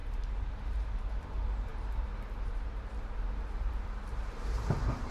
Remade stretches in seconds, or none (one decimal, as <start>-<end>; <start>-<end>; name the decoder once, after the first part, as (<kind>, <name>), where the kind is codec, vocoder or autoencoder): 0.0-1.2 (vocoder, BigVGAN v2); 1.7-5.1